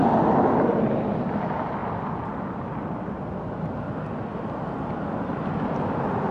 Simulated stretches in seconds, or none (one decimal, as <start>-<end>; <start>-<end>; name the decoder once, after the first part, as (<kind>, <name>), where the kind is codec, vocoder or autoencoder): none